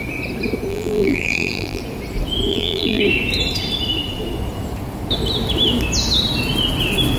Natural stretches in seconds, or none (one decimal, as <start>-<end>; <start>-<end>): 0.0-0.7; 1.8-2.5; 3.0-7.2